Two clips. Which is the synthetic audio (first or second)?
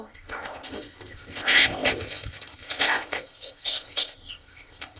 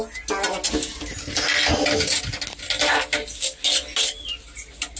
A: first